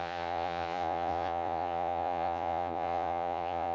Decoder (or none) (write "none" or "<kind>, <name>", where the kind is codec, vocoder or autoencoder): vocoder, Vocos